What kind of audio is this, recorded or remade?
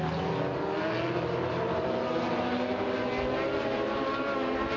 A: recorded